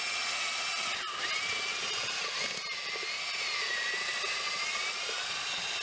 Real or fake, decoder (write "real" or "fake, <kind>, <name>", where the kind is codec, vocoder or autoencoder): real